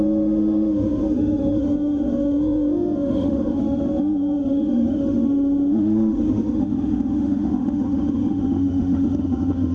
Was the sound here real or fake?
fake